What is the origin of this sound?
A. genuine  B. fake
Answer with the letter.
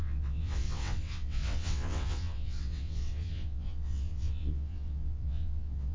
B